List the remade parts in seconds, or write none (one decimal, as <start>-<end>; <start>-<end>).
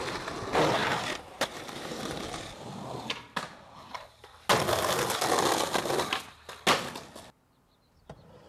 0.8-2.5